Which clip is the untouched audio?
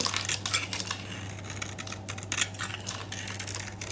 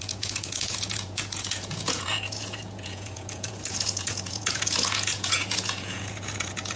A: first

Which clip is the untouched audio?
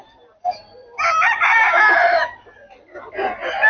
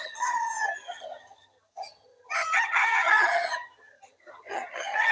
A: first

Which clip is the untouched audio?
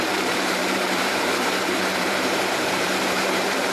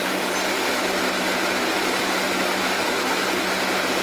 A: second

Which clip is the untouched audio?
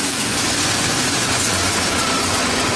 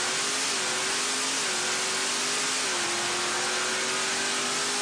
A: second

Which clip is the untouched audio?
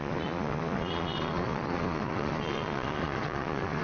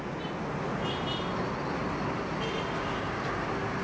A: second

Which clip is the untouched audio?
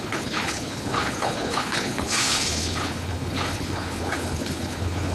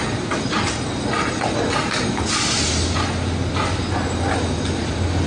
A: second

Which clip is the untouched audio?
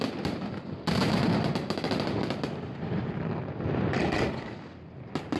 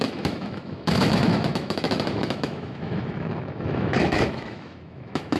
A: first